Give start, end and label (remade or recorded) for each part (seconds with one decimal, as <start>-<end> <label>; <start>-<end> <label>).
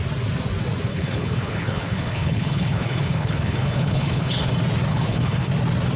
0.0-0.9 recorded; 0.9-4.5 remade; 4.5-4.9 recorded; 4.9-5.5 remade; 5.5-6.0 recorded